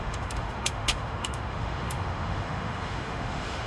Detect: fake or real fake